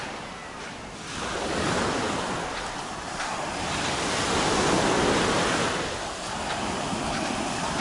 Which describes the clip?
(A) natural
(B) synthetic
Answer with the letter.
A